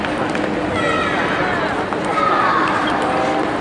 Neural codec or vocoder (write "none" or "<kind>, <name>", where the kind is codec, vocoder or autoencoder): none